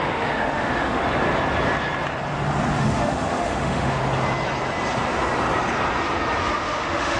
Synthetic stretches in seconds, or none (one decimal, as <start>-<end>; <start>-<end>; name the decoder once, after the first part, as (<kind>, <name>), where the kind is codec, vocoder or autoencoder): 0.0-1.0 (autoencoder, DAC-VAE); 2.8-4.0; 6.4-7.2